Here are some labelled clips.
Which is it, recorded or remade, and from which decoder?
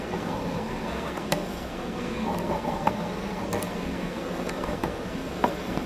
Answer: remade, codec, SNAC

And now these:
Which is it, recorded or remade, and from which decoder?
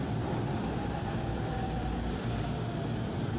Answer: remade, vocoder, BigVGAN v2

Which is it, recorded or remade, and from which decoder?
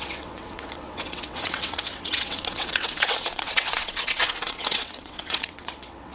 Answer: remade, vocoder, WaveNeXt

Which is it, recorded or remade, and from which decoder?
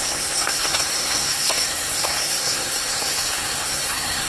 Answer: remade, codec, SNAC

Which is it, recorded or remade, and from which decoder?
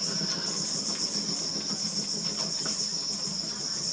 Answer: recorded